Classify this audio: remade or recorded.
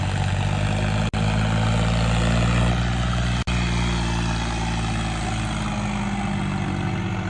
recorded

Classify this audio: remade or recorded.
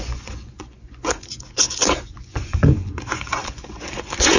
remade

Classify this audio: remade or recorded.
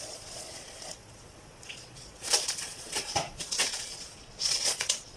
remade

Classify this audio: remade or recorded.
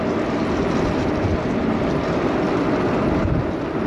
recorded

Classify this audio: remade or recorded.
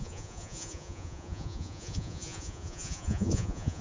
remade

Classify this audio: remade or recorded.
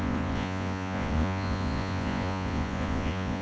remade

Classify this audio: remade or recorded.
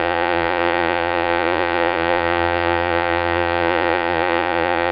remade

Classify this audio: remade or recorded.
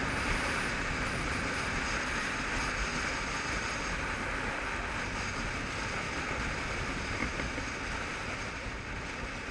recorded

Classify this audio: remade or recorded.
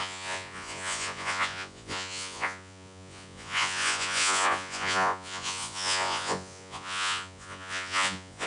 remade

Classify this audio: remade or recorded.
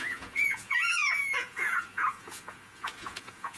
remade